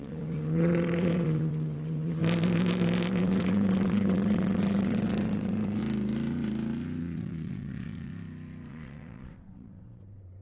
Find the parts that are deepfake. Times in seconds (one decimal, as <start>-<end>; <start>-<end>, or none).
0.0-2.2; 3.2-5.8; 7.0-8.1; 8.7-10.4